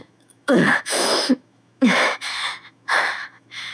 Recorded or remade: remade